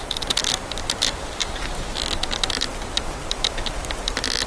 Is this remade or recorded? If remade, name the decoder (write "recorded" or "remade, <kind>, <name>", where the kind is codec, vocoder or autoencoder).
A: recorded